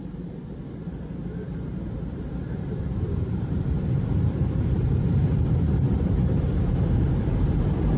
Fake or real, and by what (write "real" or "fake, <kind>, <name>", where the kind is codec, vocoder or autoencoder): fake, vocoder, BigVGAN v2